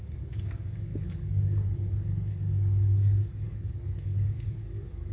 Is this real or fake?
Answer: fake